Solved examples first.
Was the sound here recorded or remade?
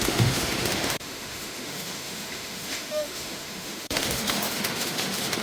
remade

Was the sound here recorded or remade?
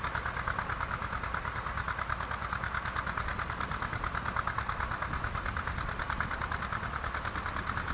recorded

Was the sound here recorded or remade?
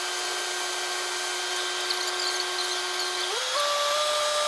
recorded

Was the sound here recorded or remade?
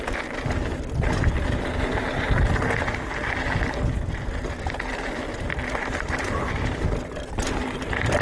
recorded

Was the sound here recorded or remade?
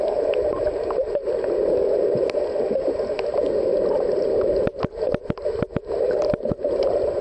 recorded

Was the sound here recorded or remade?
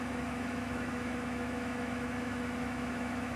remade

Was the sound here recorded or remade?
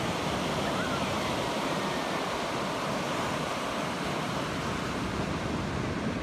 recorded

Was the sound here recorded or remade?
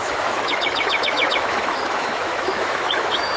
remade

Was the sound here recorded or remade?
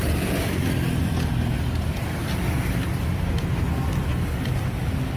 recorded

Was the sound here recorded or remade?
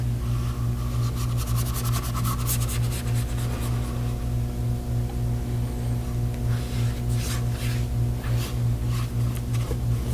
recorded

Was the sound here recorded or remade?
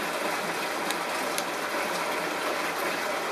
recorded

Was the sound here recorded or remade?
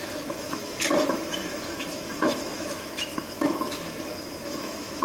remade